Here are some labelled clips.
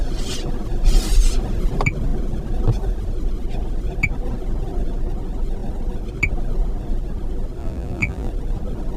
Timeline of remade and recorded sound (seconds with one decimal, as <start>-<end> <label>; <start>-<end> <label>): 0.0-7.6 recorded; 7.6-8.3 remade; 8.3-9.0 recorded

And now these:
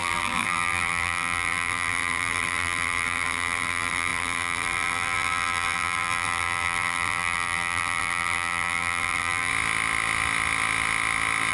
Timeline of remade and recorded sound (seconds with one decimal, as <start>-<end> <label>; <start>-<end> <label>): 0.0-9.5 remade; 9.5-11.5 recorded

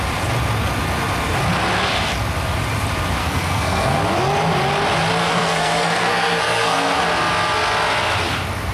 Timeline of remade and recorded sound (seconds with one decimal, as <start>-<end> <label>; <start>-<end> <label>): 0.0-3.2 recorded; 3.2-4.0 remade; 4.0-5.2 recorded; 5.2-7.0 remade; 7.0-8.7 recorded

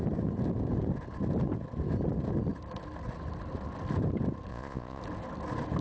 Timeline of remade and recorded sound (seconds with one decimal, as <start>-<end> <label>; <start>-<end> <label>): 0.0-4.5 recorded; 4.5-5.0 remade; 5.0-5.8 recorded

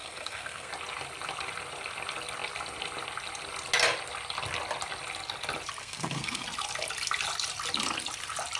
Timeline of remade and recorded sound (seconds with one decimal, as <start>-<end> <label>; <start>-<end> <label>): 0.0-0.7 remade; 0.7-5.8 recorded; 5.8-6.4 remade; 6.4-8.6 recorded

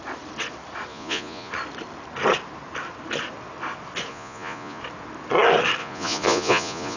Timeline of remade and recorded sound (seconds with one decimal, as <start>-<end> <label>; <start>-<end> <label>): 0.0-0.9 recorded; 0.9-1.5 remade; 1.5-4.1 recorded; 4.1-4.8 remade; 4.8-5.8 recorded; 5.8-7.0 remade

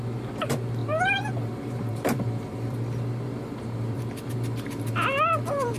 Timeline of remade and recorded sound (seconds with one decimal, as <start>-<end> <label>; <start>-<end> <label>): 0.0-5.8 remade

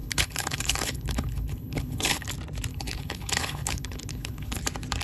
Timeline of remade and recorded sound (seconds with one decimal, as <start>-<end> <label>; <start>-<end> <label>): 0.0-2.3 remade; 2.3-2.7 recorded; 2.7-4.6 remade; 4.6-5.0 recorded